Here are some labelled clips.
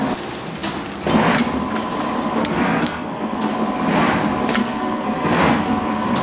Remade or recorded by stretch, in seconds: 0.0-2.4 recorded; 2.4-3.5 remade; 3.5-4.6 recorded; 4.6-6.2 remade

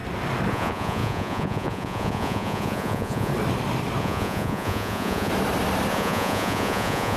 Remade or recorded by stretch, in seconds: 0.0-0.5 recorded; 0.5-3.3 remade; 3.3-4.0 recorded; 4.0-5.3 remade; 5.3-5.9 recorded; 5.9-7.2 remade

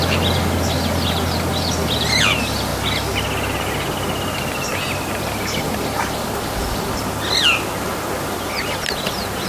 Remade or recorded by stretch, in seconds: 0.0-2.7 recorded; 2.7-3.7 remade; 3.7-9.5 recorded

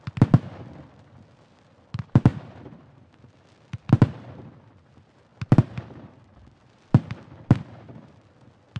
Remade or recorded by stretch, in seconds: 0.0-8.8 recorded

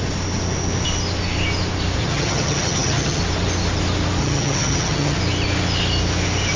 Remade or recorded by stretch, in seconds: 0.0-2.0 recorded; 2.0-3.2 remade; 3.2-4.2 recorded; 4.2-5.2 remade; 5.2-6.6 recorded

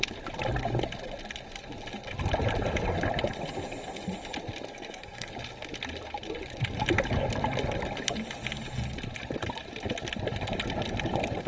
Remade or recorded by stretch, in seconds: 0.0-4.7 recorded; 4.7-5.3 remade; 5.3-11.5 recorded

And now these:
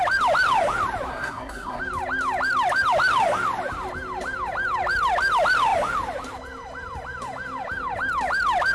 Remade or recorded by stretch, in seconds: 0.0-1.1 recorded; 1.1-1.8 remade; 1.8-8.7 recorded